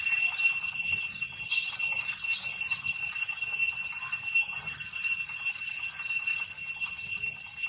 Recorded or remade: recorded